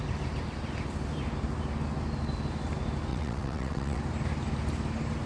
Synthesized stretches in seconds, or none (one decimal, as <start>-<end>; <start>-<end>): 3.1-4.0